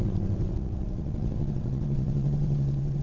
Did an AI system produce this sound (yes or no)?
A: yes